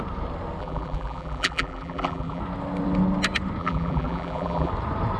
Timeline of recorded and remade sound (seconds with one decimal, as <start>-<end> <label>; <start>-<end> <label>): 0.0-0.6 recorded; 0.6-2.4 remade; 2.4-3.6 recorded; 3.6-4.7 remade; 4.7-5.2 recorded